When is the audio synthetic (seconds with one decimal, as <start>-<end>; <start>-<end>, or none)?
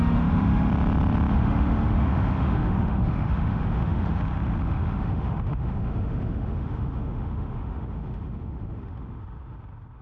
0.0-0.7; 1.3-10.0